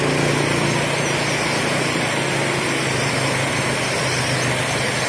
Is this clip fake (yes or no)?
no